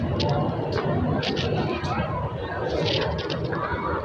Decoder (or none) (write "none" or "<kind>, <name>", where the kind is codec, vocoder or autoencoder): none